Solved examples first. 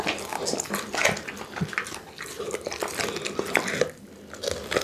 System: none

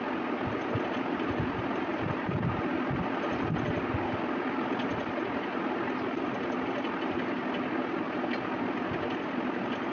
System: none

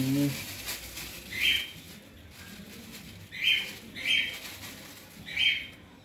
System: none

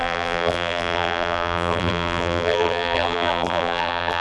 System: vocoder, BigVGAN v2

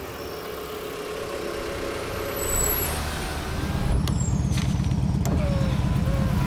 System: none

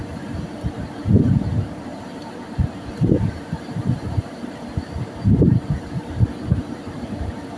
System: vocoder, BigVGAN v2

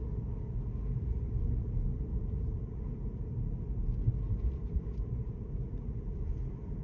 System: none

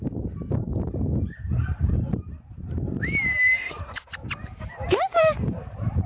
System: vocoder, BigVGAN v2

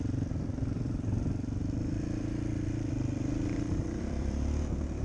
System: vocoder, BigVGAN v2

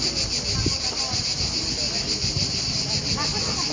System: none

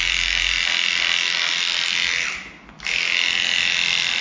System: none